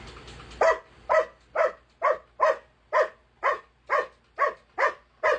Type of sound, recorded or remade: recorded